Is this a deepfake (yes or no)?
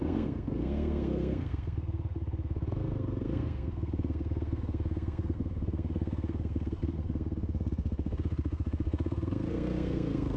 yes